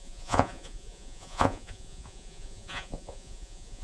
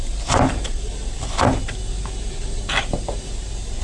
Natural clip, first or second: second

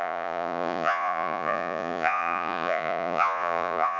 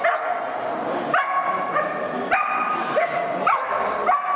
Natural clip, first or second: second